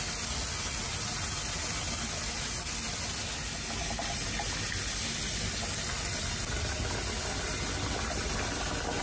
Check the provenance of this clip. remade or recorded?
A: recorded